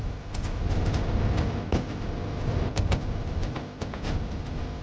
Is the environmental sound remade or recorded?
recorded